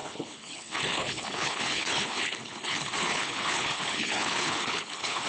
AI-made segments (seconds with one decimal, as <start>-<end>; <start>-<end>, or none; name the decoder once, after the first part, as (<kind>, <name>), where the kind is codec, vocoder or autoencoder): 0.0-5.3 (codec, HILCodec)